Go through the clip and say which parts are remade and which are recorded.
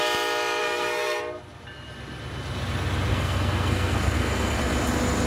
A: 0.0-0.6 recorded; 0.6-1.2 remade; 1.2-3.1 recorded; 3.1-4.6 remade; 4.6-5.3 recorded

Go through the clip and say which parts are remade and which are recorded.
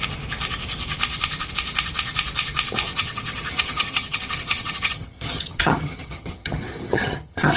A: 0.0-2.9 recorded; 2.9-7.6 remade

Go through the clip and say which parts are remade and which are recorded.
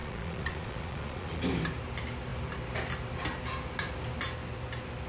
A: 0.0-1.4 remade; 1.4-5.1 recorded